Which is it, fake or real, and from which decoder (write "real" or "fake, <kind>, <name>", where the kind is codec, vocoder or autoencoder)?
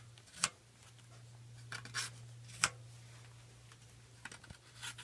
real